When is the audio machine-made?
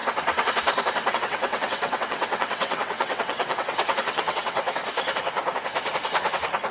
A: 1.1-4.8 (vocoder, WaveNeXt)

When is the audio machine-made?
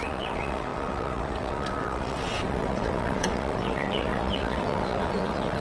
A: 0.0-5.6 (vocoder, WaveNeXt)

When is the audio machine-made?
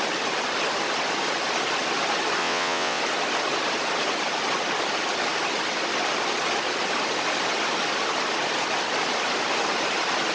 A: 2.4-3.0 (vocoder, WaveNeXt)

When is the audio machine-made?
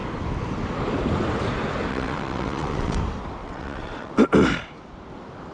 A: 1.9-3.0 (vocoder, WaveNeXt); 3.4-4.1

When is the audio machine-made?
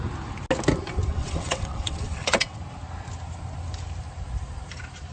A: 1.1-2.6 (vocoder, WaveNeXt)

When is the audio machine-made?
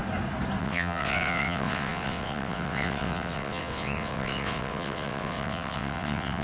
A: 0.6-6.4 (vocoder, WaveNeXt)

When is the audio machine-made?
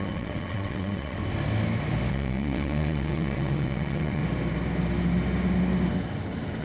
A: 0.0-1.2 (vocoder, WaveNeXt); 2.1-4.2